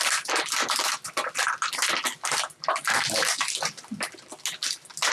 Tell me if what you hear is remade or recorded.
recorded